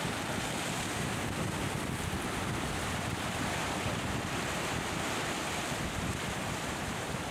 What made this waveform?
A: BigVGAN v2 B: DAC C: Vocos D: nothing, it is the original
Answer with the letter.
D